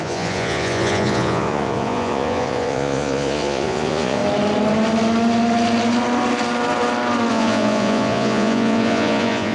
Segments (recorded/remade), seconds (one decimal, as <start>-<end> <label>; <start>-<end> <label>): 0.0-4.2 remade; 4.2-7.3 recorded; 7.3-9.5 remade